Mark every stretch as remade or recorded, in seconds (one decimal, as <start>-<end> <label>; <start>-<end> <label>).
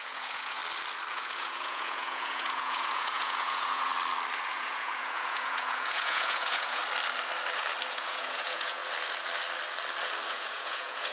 0.0-0.6 remade; 0.6-1.1 recorded; 1.1-3.9 remade; 3.9-4.5 recorded; 4.5-6.8 remade; 6.8-7.9 recorded; 7.9-8.8 remade; 8.8-10.3 recorded; 10.3-11.1 remade